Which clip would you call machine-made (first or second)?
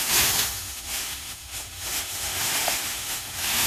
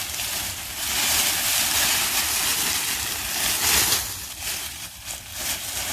first